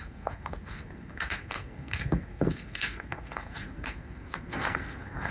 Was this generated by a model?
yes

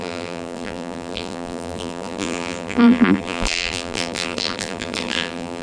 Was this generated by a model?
yes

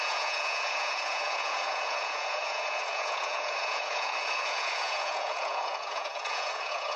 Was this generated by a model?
yes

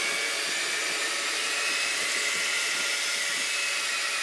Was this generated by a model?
no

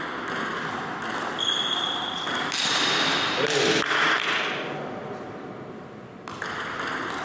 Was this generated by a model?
no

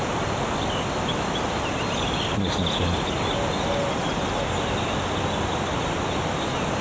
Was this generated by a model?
no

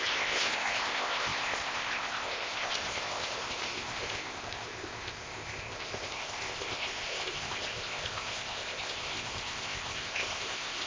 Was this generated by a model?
yes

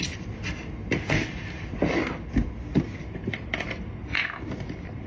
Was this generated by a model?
yes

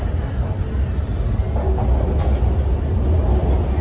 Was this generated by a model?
no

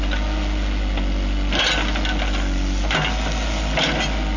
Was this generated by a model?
no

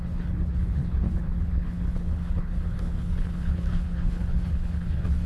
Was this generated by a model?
yes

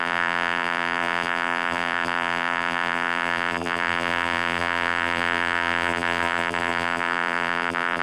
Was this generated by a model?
yes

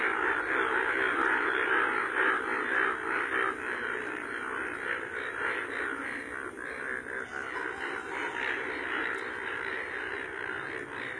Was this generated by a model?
no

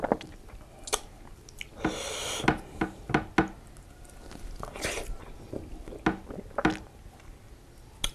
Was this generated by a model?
no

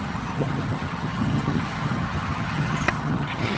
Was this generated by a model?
yes